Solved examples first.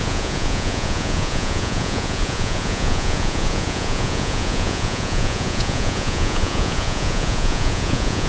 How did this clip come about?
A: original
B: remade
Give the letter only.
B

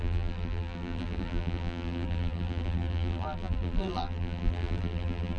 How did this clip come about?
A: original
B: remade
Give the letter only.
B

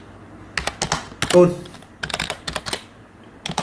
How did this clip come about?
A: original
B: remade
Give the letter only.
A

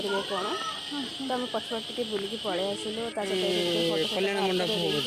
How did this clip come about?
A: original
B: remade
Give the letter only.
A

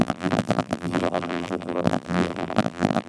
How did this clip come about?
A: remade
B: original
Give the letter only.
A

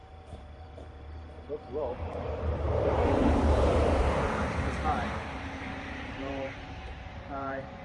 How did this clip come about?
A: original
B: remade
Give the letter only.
B